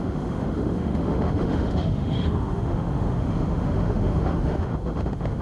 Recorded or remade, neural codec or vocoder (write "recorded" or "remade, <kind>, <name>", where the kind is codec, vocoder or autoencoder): remade, autoencoder, DAC-VAE